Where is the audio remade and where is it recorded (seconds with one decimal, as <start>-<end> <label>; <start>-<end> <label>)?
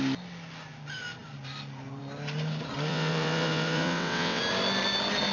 0.0-2.9 recorded; 2.9-4.4 remade; 4.4-5.3 recorded